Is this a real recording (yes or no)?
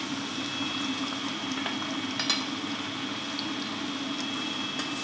yes